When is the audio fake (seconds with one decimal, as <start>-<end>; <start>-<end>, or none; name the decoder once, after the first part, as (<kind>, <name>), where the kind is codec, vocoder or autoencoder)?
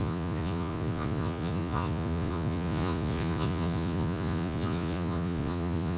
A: 0.0-6.0 (vocoder, Vocos)